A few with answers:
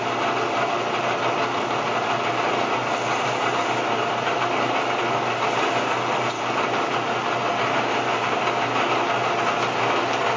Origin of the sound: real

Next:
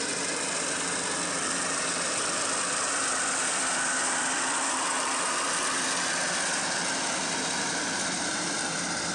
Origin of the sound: fake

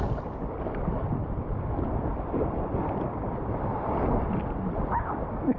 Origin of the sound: fake